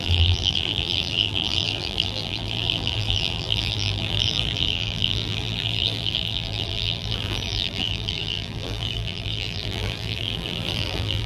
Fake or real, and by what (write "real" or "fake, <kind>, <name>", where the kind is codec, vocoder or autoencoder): fake, vocoder, BigVGAN v2